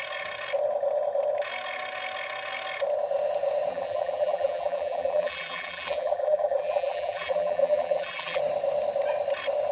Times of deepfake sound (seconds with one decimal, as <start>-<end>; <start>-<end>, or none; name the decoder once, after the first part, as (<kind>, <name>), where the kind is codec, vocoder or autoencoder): 3.7-8.4 (vocoder, BigVGAN v2)